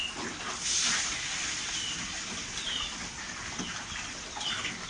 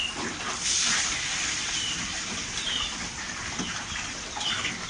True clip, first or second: first